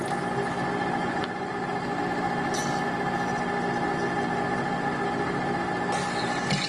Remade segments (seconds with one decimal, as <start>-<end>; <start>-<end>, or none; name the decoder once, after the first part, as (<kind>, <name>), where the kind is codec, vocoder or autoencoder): 1.0-1.5 (vocoder, Vocos)